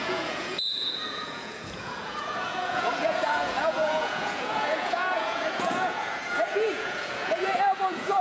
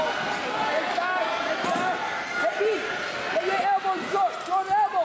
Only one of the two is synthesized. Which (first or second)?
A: first